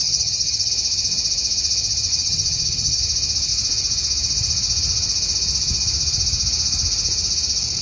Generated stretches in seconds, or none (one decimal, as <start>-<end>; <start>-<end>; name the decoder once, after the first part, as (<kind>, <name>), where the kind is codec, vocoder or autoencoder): 0.0-0.7 (vocoder, HiFi-GAN); 2.1-3.0